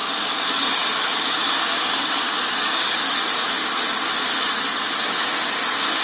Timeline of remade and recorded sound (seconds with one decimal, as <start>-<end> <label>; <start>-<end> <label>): 0.0-3.0 remade; 3.0-6.0 recorded